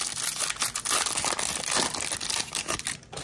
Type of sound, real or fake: real